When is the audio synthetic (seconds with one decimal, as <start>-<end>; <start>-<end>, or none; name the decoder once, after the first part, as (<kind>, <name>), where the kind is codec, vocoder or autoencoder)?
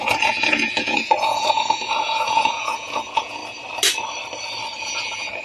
0.0-3.4 (vocoder, Vocos); 4.8-5.4